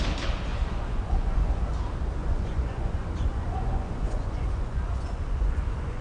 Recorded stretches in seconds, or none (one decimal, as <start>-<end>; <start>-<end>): 0.0-0.5; 1.6-2.2

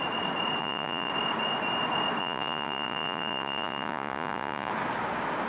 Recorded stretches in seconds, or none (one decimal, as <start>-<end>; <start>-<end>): 0.0-0.6; 1.1-2.2; 4.7-5.5

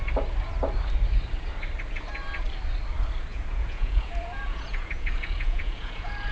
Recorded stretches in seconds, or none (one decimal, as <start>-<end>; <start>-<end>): 0.0-3.3

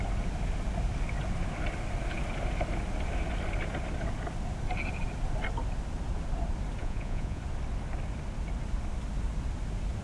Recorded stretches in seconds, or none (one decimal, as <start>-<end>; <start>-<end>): 0.0-6.8; 7.4-10.0

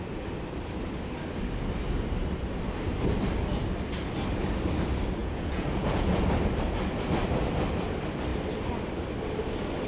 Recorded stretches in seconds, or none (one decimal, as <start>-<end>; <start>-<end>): 0.0-5.2; 6.2-9.9

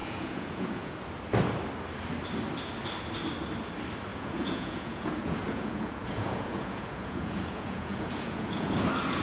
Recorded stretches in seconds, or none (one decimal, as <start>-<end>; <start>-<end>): 1.0-4.1; 8.7-9.2